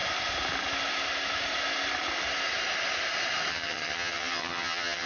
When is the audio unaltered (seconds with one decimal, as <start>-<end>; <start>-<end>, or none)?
0.0-3.5